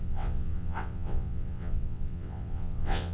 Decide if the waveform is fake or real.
fake